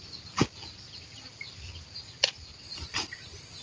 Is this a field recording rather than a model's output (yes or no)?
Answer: yes